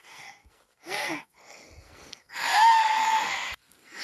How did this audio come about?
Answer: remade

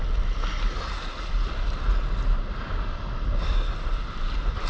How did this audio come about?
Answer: recorded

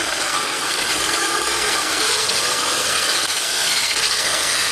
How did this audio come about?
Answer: remade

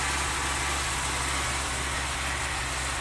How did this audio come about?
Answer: recorded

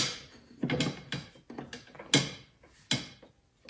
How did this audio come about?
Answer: recorded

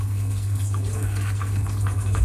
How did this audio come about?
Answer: remade